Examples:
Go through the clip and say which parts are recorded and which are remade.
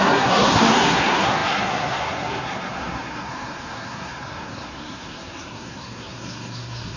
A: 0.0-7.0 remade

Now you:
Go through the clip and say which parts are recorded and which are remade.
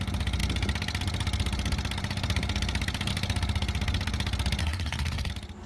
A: 0.0-4.6 recorded; 4.6-5.3 remade; 5.3-5.7 recorded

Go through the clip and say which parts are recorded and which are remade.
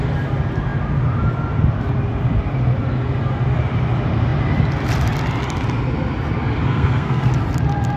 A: 0.0-6.6 recorded; 6.6-7.3 remade; 7.3-8.0 recorded